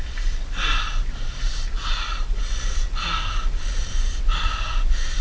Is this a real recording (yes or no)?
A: yes